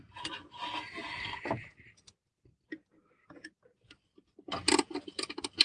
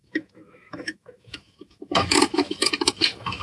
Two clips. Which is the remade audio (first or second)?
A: second